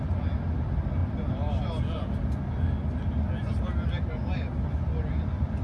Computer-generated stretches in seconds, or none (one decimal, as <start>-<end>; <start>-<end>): none